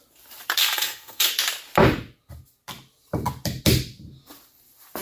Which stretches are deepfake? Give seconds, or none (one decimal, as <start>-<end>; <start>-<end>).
0.6-1.3